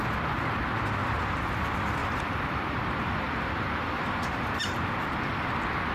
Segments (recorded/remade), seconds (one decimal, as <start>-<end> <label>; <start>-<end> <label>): 0.0-1.0 recorded; 1.0-1.5 remade; 1.5-2.0 recorded; 2.0-5.5 remade; 5.5-5.9 recorded